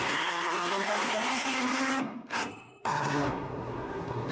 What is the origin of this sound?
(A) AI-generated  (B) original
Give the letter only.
A